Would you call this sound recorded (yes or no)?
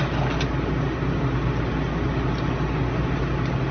yes